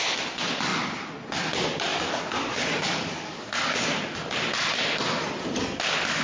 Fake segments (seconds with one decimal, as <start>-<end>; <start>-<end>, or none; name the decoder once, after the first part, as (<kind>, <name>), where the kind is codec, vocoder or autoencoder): 1.9-4.2 (codec, DAC)